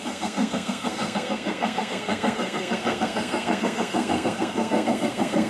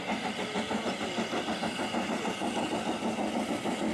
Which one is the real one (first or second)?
second